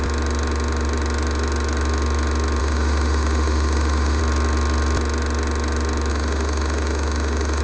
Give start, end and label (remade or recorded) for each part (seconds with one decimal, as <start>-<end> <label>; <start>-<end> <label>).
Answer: 0.0-2.6 recorded; 2.6-4.2 remade; 4.2-6.1 recorded; 6.1-7.6 remade